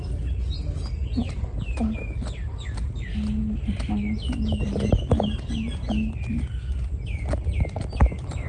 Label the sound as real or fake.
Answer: real